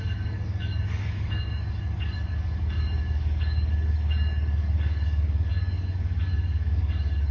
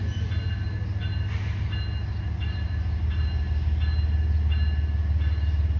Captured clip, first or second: second